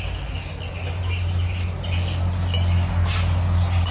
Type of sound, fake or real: real